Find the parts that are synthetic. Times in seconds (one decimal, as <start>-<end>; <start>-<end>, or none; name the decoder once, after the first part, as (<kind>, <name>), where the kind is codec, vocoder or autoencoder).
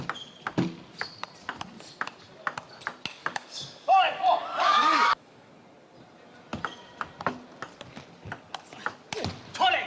3.2-5.5 (codec, DAC)